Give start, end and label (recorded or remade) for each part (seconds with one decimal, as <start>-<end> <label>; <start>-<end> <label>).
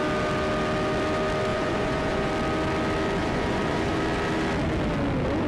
0.0-1.5 recorded; 1.5-2.3 remade; 2.3-3.2 recorded; 3.2-4.0 remade; 4.0-5.5 recorded